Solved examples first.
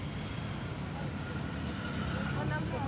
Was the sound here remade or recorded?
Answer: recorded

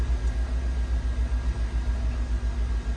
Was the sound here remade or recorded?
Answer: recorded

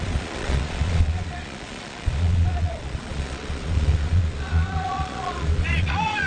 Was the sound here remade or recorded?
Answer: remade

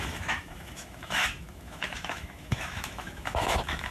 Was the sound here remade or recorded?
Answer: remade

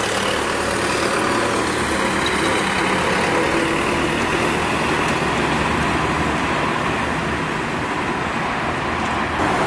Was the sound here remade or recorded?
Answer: recorded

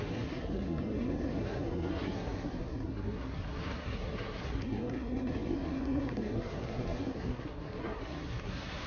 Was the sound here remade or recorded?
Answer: remade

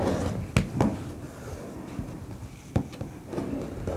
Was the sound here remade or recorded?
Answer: recorded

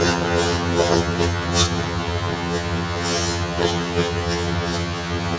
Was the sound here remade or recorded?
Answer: remade